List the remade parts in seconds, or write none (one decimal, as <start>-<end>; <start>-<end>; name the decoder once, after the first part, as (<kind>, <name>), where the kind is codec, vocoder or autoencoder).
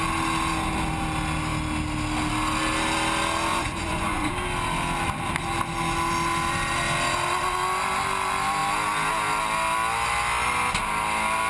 3.5-4.3 (vocoder, Vocos)